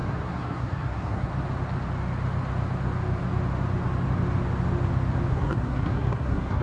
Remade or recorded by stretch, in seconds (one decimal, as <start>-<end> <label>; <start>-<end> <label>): 0.0-1.3 remade; 1.3-5.3 recorded; 5.3-6.6 remade